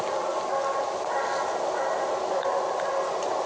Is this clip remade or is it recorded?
recorded